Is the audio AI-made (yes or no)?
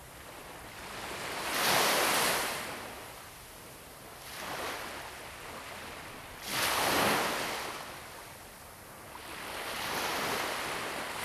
no